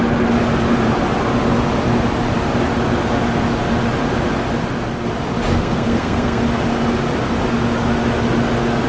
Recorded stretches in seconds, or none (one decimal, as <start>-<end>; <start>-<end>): 0.0-5.5; 6.4-8.9